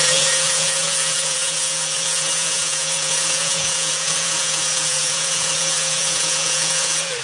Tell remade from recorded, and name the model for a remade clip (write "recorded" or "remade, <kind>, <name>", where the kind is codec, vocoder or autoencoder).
remade, vocoder, Vocos